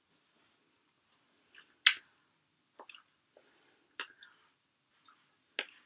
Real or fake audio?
real